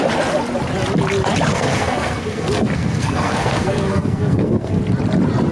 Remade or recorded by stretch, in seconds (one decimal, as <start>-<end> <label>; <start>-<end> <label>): 0.0-1.5 recorded; 1.5-4.8 remade; 4.8-5.5 recorded